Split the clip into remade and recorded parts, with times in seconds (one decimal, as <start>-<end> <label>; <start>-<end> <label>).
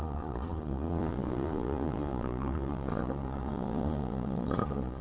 0.0-5.0 remade